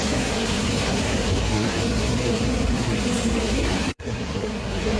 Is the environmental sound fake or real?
fake